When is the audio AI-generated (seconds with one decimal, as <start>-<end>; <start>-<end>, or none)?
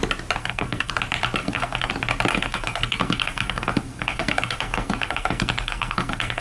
0.4-0.9; 1.4-1.9; 2.3-6.4